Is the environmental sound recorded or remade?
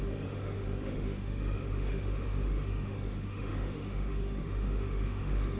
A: remade